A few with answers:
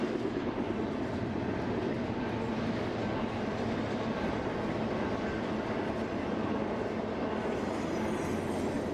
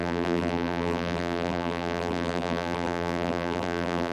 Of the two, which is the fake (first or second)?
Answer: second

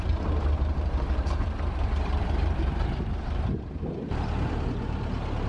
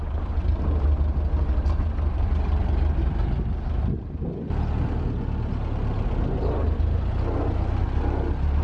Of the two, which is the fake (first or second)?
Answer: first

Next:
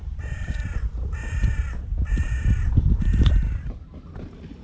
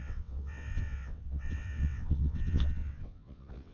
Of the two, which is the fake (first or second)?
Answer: second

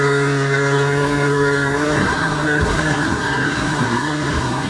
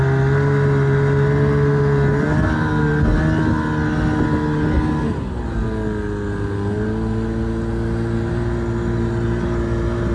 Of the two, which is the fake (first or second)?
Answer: first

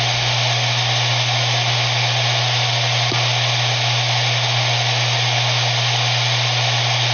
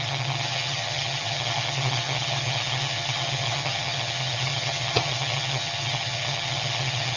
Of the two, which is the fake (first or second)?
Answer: second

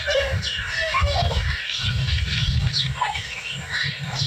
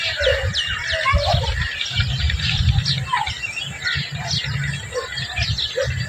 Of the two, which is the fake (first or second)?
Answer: first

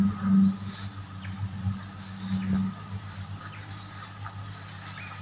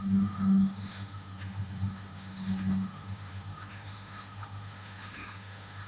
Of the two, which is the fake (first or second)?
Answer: second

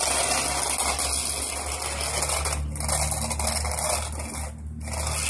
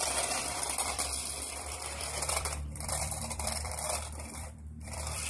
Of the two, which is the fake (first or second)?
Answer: second